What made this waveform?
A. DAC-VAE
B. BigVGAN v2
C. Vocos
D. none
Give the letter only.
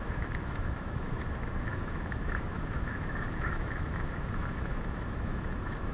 A